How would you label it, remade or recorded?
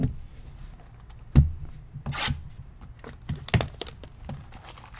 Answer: recorded